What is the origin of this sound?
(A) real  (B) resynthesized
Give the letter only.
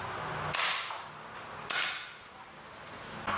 A